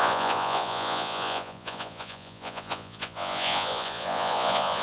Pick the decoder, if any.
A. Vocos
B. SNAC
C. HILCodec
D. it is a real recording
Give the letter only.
A